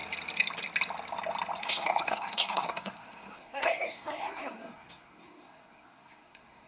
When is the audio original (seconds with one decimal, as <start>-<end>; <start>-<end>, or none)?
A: 0.0-1.6